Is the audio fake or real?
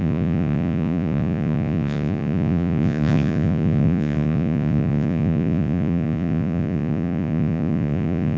fake